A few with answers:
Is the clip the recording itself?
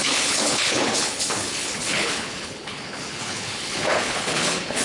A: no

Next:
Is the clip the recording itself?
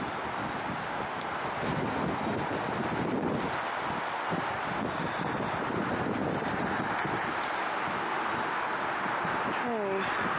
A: yes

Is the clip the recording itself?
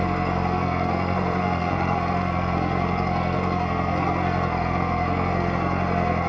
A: no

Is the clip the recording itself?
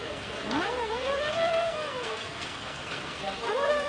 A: no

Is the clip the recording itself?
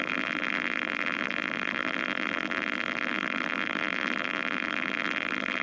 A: no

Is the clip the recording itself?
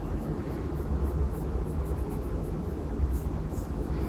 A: no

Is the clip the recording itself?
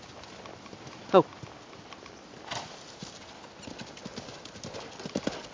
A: yes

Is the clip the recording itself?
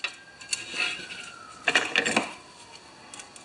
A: yes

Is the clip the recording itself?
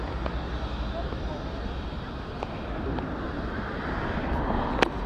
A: no